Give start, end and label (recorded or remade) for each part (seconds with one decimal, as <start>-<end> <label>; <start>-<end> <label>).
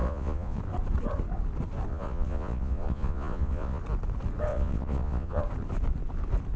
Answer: 0.0-0.6 remade; 0.6-1.9 recorded; 1.9-3.8 remade; 3.8-4.5 recorded; 4.5-5.4 remade; 5.4-6.6 recorded